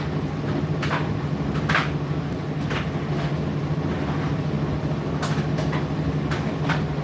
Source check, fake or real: real